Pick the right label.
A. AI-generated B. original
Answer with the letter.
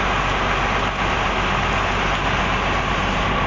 B